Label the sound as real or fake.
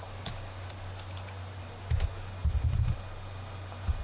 real